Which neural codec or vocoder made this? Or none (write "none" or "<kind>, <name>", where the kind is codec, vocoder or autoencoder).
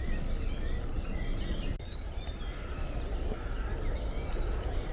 none